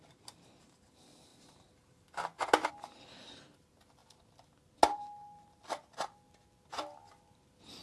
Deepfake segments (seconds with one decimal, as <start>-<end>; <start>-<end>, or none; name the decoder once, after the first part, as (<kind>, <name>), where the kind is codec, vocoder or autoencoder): none